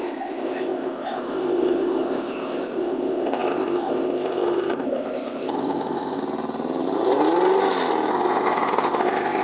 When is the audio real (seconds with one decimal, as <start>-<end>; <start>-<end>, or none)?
6.2-8.1